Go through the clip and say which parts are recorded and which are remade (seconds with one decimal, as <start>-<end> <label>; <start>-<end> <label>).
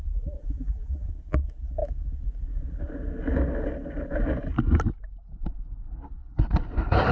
0.0-0.4 recorded; 0.4-1.1 remade; 1.1-7.1 recorded